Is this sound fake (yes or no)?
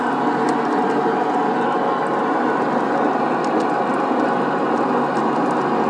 no